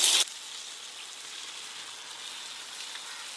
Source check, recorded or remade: recorded